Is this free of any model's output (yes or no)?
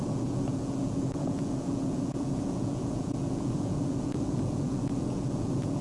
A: no